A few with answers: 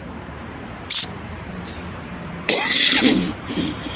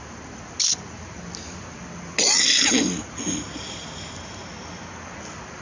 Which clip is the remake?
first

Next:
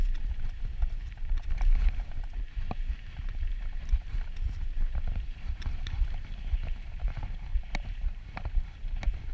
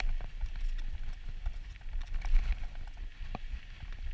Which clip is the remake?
first